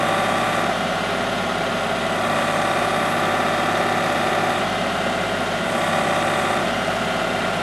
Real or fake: fake